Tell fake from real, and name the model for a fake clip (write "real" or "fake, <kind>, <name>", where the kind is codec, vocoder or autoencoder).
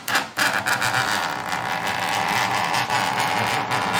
real